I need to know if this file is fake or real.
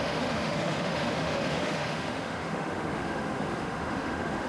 fake